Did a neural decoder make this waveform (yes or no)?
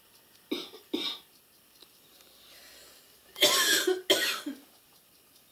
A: no